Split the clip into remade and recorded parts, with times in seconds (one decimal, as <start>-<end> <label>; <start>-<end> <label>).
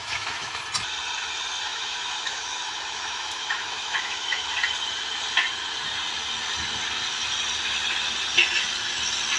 0.0-0.6 remade; 0.6-1.7 recorded; 1.7-4.5 remade; 4.5-9.4 recorded